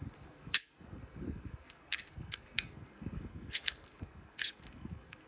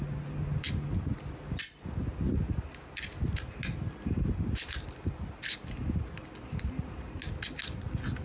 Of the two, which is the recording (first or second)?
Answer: second